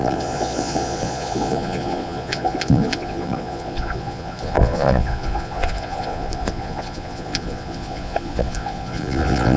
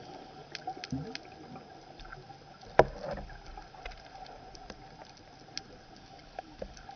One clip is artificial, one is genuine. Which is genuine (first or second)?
second